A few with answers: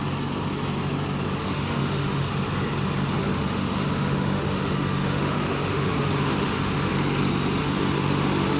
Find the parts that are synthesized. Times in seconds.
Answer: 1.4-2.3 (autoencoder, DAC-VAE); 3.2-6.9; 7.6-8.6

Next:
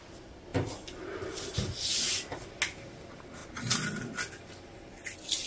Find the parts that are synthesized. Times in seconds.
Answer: none

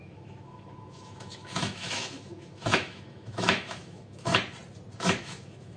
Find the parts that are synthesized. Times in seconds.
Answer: 0.0-4.3 (autoencoder, DAC-VAE); 5.0-5.8

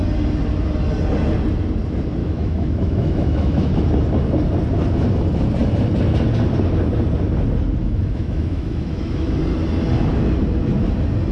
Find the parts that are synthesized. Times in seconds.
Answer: 2.2-3.8 (autoencoder, DAC-VAE); 7.8-9.4

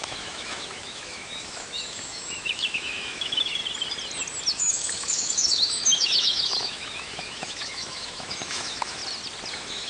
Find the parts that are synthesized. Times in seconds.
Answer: 0.0-3.6 (autoencoder, DAC-VAE); 4.5-9.0; 9.5-9.9

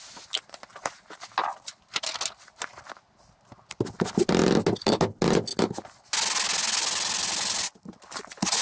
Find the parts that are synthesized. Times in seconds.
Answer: none